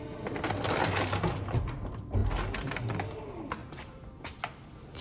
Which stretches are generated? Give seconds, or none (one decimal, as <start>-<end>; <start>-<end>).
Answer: 3.6-4.3